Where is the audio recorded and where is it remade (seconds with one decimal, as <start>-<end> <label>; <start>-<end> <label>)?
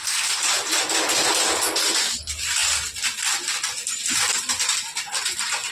0.0-2.2 remade; 2.2-5.7 recorded